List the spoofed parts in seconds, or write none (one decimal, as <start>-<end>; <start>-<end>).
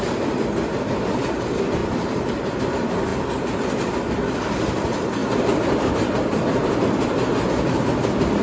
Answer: 1.8-2.6